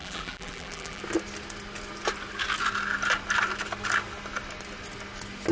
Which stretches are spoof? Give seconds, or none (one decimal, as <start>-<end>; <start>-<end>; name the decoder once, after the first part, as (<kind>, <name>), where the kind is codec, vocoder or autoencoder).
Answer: 0.0-1.0 (vocoder, BigVGAN v2)